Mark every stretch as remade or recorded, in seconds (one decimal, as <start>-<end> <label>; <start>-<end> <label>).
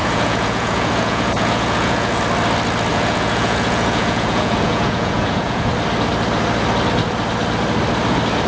0.0-2.2 remade; 2.2-2.9 recorded; 2.9-5.7 remade; 5.7-8.5 recorded